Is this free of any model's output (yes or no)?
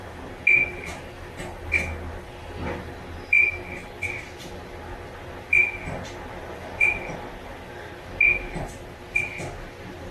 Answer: yes